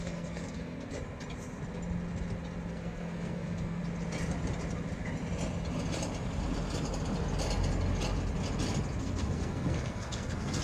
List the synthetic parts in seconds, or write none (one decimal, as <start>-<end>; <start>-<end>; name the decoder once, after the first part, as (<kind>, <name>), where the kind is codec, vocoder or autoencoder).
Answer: 0.0-0.9 (codec, SNAC); 2.7-3.8; 9.0-10.6